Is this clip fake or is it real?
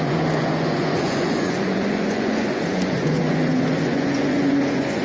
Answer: fake